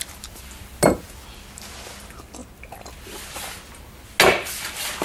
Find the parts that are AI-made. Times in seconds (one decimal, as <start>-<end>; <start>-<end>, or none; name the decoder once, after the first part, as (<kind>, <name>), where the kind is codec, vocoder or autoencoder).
none